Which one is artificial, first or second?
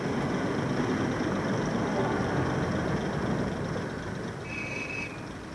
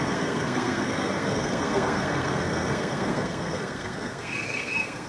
second